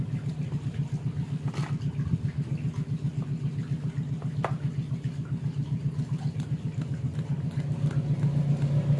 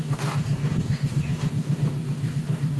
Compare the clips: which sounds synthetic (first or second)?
second